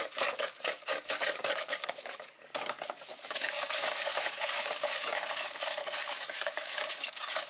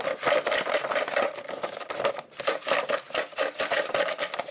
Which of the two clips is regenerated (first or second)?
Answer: first